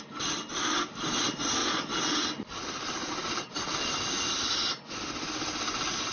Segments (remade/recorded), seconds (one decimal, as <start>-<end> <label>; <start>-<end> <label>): 0.0-6.1 recorded